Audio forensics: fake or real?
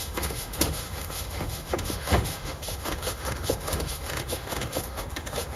fake